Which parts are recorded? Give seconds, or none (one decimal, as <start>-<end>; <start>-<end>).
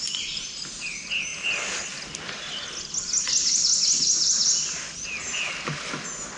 0.0-6.4